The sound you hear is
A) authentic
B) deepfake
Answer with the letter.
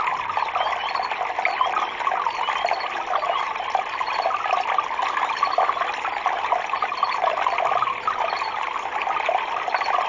A